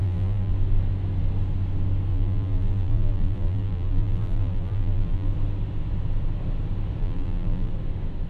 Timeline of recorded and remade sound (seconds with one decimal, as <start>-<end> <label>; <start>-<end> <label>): 0.0-0.5 remade; 0.5-2.1 recorded; 2.1-5.3 remade; 5.3-7.0 recorded; 7.0-7.7 remade; 7.7-8.3 recorded